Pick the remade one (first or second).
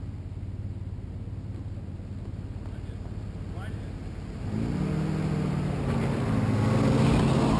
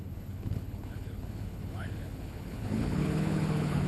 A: second